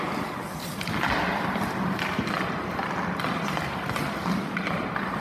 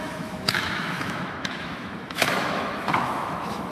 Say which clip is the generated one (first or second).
second